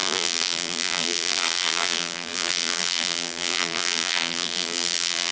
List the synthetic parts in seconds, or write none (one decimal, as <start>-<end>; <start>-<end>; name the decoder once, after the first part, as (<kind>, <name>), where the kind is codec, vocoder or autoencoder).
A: 0.0-5.3 (vocoder, BigVGAN v2)